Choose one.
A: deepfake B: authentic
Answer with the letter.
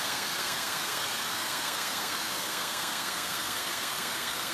A